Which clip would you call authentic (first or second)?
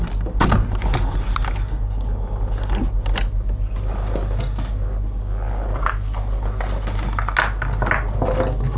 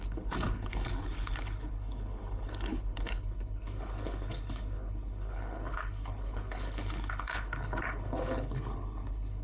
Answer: first